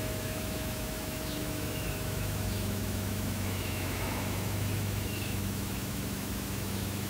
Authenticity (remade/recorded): remade